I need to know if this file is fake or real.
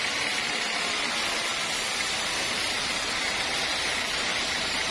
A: fake